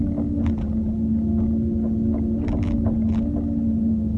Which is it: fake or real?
real